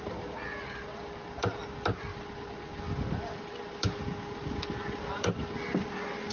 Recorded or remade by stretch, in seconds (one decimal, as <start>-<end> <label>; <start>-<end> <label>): 0.0-6.3 recorded